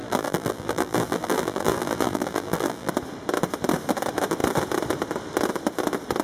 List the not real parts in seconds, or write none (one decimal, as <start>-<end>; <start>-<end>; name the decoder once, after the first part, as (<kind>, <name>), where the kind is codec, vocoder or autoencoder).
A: 0.0-2.9 (vocoder, BigVGAN v2)